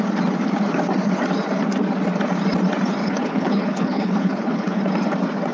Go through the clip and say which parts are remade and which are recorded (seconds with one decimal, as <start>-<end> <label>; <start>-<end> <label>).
0.0-3.0 recorded; 3.0-4.8 remade; 4.8-5.5 recorded

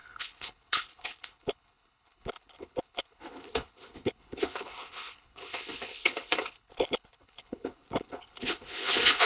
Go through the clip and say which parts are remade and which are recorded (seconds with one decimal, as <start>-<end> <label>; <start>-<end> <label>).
0.0-9.3 remade

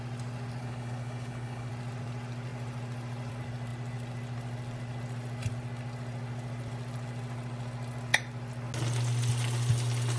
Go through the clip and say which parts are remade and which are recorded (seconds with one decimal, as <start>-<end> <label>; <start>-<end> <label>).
0.0-0.6 recorded; 0.6-1.7 remade; 1.7-10.2 recorded

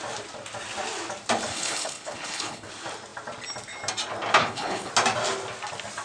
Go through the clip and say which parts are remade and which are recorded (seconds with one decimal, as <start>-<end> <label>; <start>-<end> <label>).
0.0-1.5 recorded; 1.5-2.7 remade; 2.7-4.4 recorded; 4.4-4.9 remade; 4.9-6.0 recorded

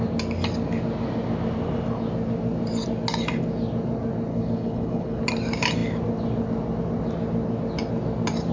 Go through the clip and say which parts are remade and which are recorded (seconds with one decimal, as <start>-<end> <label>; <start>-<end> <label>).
0.0-4.3 recorded; 4.3-5.2 remade; 5.2-8.5 recorded

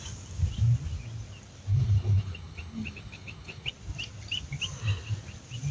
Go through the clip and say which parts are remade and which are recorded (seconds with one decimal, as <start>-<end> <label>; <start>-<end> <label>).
0.0-1.7 recorded; 1.7-3.7 remade; 3.7-5.7 recorded